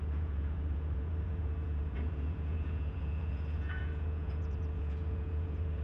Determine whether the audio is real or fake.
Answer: fake